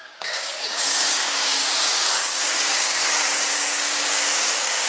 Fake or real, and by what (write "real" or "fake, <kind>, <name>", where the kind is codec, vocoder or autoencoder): fake, codec, DAC